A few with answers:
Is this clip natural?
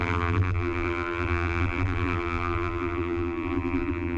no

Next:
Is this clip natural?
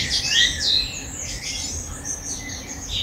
no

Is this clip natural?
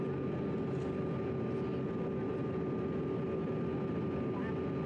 yes